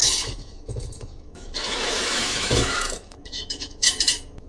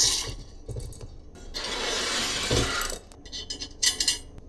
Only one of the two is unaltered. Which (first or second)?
second